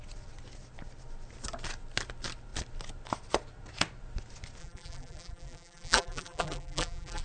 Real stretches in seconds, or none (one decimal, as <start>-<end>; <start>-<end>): 0.0-4.6